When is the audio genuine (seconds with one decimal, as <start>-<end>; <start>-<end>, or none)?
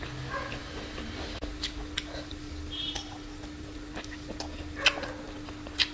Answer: 0.0-5.9